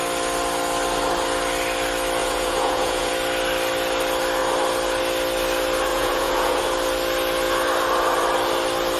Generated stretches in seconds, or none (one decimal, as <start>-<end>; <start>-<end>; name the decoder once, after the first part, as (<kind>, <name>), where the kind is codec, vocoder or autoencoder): 2.2-3.1 (vocoder, Vocos); 5.9-6.6